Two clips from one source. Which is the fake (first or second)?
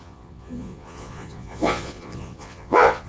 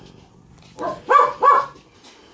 first